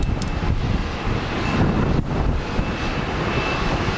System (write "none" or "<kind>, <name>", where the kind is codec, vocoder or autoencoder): none